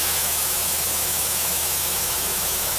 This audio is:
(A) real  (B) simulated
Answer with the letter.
B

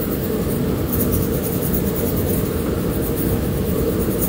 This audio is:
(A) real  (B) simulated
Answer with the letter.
A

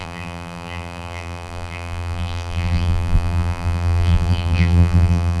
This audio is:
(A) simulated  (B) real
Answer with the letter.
A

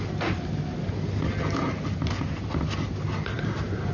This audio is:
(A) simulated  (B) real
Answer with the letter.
B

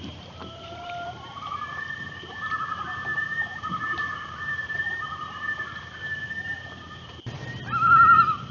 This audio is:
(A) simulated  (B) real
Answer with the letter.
A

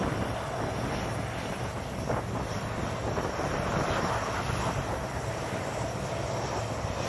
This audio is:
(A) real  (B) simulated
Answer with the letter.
A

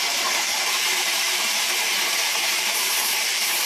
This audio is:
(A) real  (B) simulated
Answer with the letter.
B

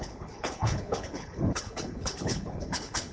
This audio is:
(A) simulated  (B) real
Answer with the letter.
A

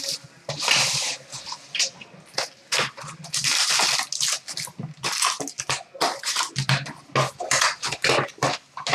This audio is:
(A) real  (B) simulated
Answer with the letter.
A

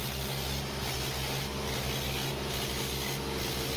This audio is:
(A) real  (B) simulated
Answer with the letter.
A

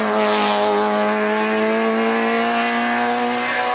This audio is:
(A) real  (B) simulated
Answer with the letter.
A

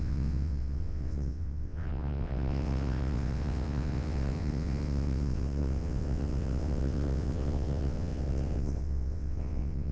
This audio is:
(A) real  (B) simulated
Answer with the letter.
B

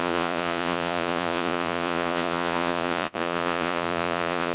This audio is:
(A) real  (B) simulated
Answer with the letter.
B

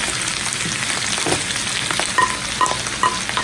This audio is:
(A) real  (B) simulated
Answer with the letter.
A